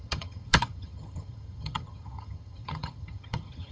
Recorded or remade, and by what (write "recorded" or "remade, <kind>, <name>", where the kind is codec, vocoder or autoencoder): remade, vocoder, HiFi-GAN